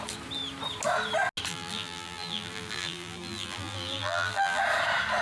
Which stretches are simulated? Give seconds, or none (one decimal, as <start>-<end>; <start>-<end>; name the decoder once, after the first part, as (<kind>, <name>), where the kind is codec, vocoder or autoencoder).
1.5-4.6 (vocoder, BigVGAN v2)